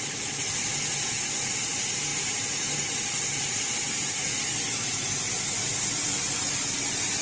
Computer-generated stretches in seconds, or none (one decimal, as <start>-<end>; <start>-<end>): none